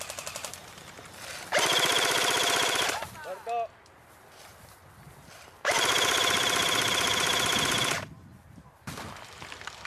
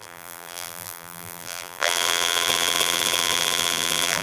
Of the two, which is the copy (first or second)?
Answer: second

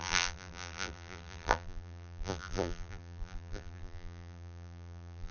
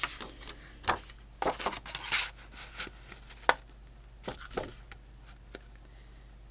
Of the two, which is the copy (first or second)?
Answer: first